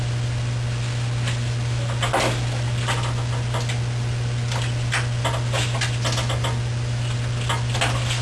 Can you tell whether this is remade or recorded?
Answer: recorded